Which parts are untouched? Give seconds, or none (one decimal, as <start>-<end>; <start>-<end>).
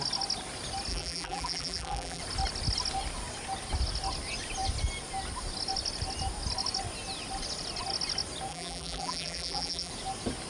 0.0-0.9; 2.2-8.5; 9.9-10.5